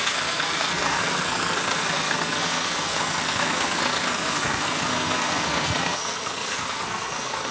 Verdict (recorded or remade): remade